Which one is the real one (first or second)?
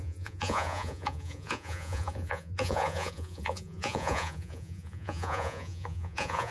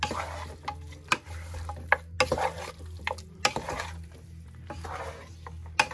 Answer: second